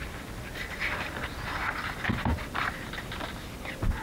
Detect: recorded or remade recorded